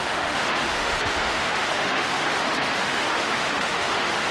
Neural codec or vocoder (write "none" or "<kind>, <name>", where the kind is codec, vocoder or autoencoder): autoencoder, DAC-VAE